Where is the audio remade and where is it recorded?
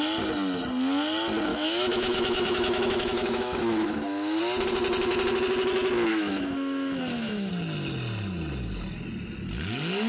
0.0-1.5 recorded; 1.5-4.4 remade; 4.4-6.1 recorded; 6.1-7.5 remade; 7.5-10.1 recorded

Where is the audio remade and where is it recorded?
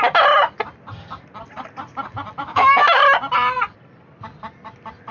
0.0-2.4 recorded; 2.4-3.0 remade; 3.0-5.1 recorded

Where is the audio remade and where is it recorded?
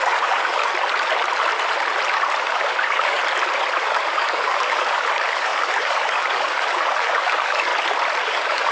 0.0-0.6 remade; 0.6-2.4 recorded; 2.4-3.2 remade; 3.2-3.8 recorded; 3.8-7.7 remade; 7.7-8.2 recorded; 8.2-8.7 remade